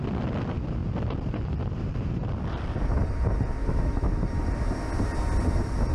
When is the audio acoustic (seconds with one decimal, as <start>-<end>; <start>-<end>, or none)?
0.0-3.6; 4.1-5.9